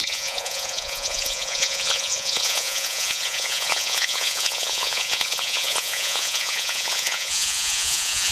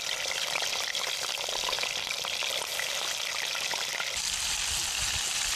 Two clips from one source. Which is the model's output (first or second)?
first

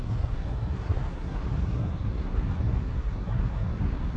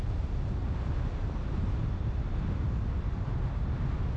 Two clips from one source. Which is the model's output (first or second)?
first